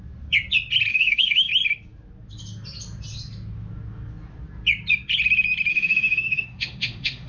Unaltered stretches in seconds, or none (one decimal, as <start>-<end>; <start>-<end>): 0.0-0.9; 1.5-5.7